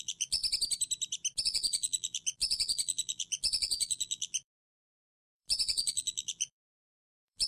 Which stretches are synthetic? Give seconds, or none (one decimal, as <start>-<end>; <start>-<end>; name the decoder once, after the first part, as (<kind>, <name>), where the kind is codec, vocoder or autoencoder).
0.0-0.4 (vocoder, BigVGAN v2); 1.4-7.5